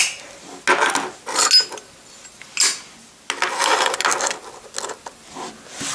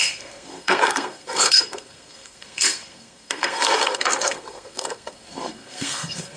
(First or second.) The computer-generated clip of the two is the second